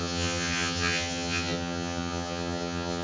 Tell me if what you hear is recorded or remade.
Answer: remade